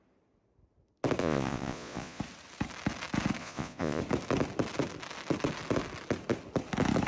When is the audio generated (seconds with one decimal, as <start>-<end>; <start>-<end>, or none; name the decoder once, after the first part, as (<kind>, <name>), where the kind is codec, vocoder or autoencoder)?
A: 1.2-2.2 (vocoder, Vocos); 3.4-4.0